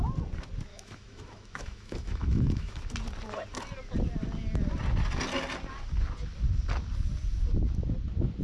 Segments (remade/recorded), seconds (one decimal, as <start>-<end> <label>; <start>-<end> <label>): 0.0-0.7 recorded; 0.7-2.9 remade; 2.9-8.4 recorded